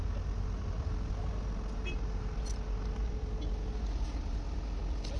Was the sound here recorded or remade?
recorded